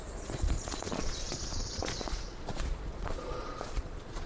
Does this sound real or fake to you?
fake